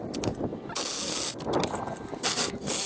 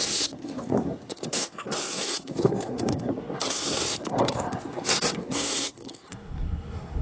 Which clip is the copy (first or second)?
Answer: second